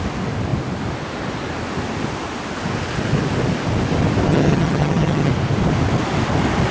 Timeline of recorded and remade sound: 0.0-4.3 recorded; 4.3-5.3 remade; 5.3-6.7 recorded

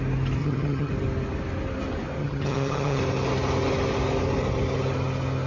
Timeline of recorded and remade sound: 0.0-0.4 recorded; 0.4-0.9 remade; 0.9-2.2 recorded; 2.2-3.0 remade; 3.0-5.5 recorded